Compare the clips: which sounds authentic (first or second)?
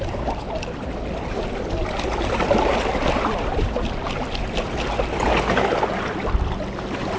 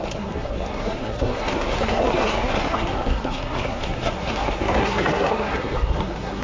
first